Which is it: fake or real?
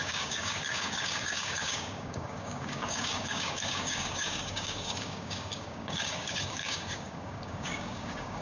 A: fake